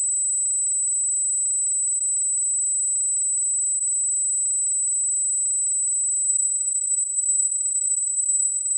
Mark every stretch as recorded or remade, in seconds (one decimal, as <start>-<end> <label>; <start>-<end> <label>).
0.0-6.3 recorded; 6.3-8.8 remade